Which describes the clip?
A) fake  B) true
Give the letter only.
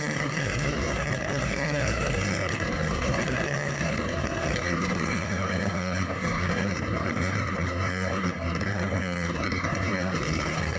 A